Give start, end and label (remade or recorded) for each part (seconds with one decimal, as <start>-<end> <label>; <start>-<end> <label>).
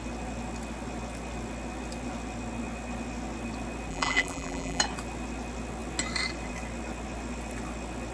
0.0-3.9 recorded; 3.9-4.8 remade; 4.8-8.1 recorded